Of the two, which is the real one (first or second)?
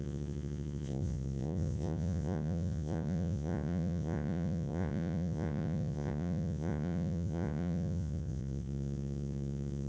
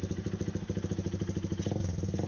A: second